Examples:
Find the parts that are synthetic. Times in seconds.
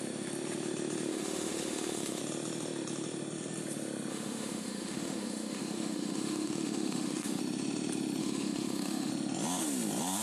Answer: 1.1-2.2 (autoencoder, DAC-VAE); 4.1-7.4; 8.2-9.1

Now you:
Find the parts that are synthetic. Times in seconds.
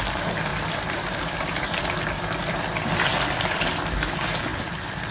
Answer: 0.5-3.6 (vocoder, BigVGAN v2); 4.5-5.1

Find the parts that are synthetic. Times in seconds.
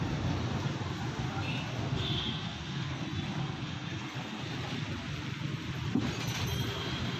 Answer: 1.8-3.0 (codec, SNAC); 3.4-4.4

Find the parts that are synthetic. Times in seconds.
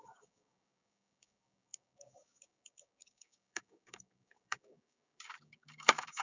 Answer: 0.0-6.2 (codec, DAC)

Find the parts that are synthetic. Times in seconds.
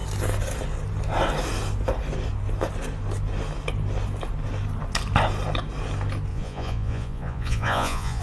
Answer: 6.3-8.2 (vocoder, Vocos)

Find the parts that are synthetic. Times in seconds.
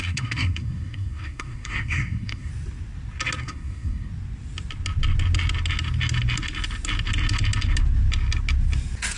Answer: 0.0-2.5 (codec, SNAC); 3.4-4.1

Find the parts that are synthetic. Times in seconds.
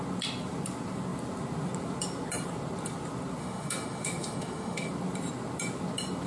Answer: 3.4-4.9 (autoencoder, DAC-VAE)